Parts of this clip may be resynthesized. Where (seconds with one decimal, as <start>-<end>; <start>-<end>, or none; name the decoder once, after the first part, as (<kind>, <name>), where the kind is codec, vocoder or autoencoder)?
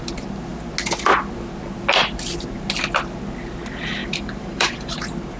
4.0-4.9 (vocoder, BigVGAN v2)